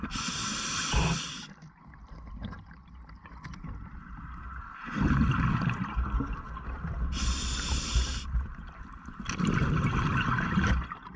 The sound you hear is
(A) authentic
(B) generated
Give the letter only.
A